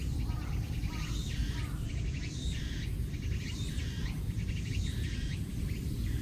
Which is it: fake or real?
real